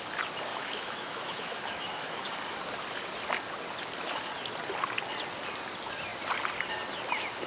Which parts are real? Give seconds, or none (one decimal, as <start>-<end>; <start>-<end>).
0.0-0.5; 2.3-7.5